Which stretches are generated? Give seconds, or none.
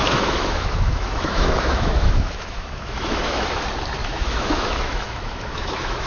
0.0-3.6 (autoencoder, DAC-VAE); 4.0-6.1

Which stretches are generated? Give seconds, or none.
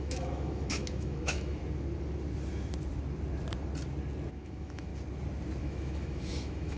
0.0-1.6 (autoencoder, DAC-VAE); 4.3-4.9; 5.6-6.8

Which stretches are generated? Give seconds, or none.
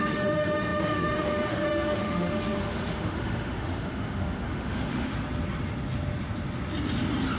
0.0-5.1 (autoencoder, DAC-VAE)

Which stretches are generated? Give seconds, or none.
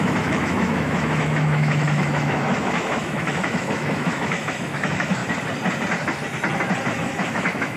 0.0-5.2 (autoencoder, DAC-VAE); 6.9-7.8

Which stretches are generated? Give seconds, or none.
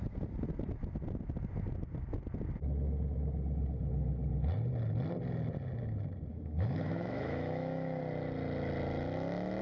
6.3-8.0 (autoencoder, DAC-VAE)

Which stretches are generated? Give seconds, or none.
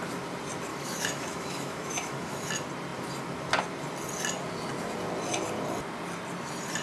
0.7-2.5 (autoencoder, DAC-VAE)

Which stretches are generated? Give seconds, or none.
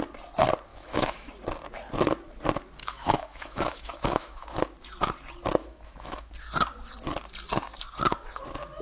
0.7-1.3 (autoencoder, DAC-VAE); 2.8-4.6; 5.6-6.3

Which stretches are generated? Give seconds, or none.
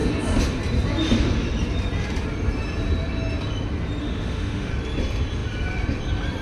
4.0-4.7 (autoencoder, DAC-VAE)